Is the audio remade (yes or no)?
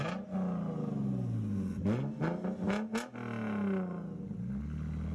no